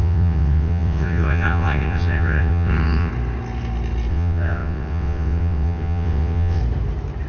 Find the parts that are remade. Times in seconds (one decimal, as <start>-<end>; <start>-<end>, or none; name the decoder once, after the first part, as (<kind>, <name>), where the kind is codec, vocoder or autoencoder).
0.0-3.1 (vocoder, WaveNeXt); 4.1-6.6